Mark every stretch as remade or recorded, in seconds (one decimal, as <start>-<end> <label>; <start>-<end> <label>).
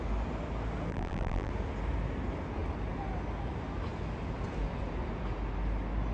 0.0-0.9 recorded; 0.9-1.5 remade; 1.5-6.1 recorded